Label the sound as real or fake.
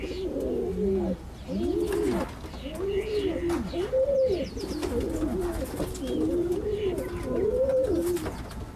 real